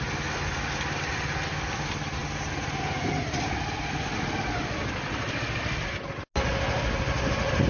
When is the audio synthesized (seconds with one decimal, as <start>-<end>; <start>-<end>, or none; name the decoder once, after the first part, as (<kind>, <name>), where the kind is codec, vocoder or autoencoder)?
none